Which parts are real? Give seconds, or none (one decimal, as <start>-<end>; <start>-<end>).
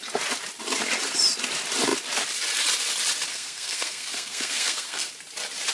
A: 0.0-3.3; 5.1-5.7